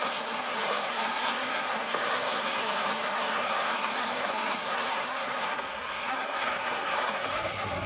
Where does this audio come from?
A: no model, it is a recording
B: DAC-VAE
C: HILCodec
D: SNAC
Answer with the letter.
D